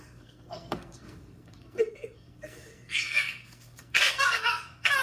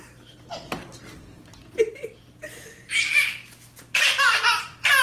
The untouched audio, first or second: second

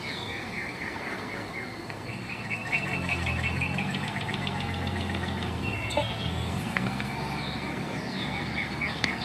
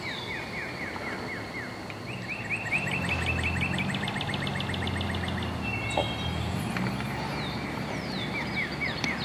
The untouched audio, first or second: second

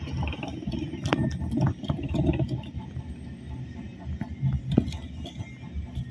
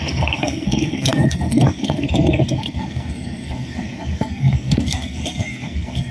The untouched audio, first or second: first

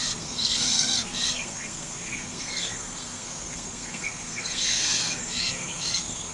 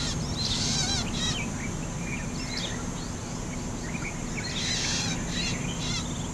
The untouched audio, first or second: second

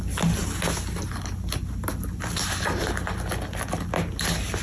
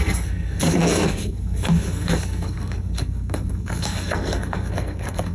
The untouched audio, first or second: first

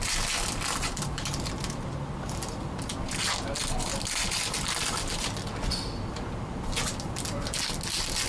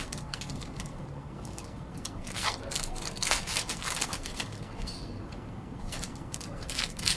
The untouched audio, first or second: first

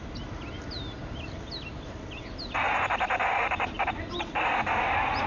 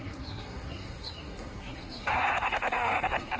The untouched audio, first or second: first